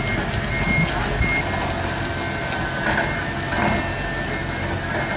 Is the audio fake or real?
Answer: real